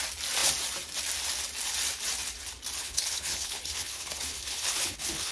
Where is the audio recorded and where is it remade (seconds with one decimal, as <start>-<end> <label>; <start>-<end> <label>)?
0.0-2.8 recorded; 2.8-5.3 remade